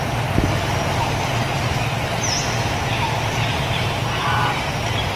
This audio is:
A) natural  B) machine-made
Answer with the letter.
A